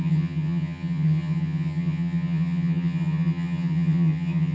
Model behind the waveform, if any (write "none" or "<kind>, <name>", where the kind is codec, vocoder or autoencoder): vocoder, HiFi-GAN